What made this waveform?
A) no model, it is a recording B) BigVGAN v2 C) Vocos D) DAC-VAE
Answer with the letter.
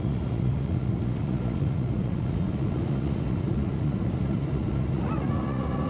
C